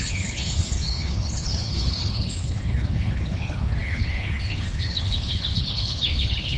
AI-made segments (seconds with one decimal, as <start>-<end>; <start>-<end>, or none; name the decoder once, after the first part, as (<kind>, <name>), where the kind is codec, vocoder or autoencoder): 0.0-6.6 (codec, HILCodec)